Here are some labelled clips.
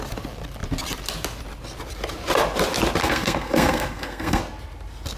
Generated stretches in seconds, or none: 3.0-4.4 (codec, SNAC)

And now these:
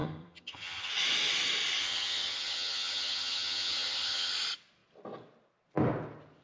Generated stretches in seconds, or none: 0.0-0.9 (vocoder, HiFi-GAN); 1.8-4.3

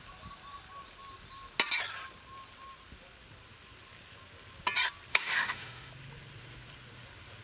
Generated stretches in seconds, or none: 5.1-5.9 (autoencoder, DAC-VAE)

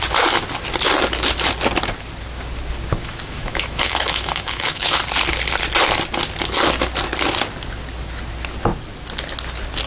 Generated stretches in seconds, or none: 3.0-5.0 (autoencoder, DAC-VAE)

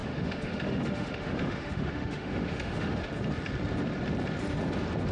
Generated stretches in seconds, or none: 0.0-3.1 (autoencoder, DAC-VAE)